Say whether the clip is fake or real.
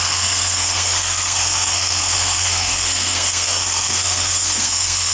fake